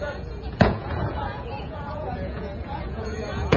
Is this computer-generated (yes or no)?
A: yes